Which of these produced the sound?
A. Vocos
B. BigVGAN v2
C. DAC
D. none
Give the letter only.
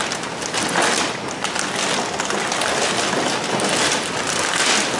D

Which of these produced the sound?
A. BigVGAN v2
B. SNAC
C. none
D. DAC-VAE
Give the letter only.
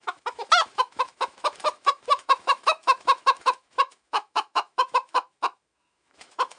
D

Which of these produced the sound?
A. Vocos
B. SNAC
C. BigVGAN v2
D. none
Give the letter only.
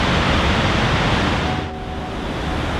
D